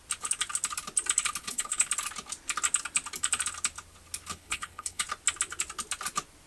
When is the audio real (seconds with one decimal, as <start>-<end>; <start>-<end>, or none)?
0.0-1.4; 1.9-4.3; 5.0-6.5